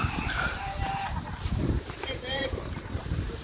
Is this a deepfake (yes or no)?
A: yes